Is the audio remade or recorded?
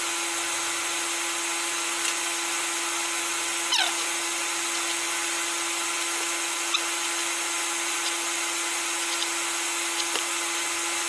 recorded